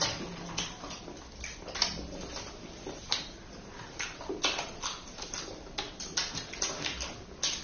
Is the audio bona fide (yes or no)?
yes